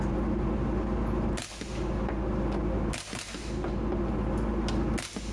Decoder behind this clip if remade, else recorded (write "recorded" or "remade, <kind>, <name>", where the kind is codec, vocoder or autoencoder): recorded